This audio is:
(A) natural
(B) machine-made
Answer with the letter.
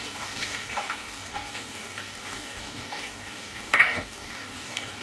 B